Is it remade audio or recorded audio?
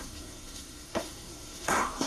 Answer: remade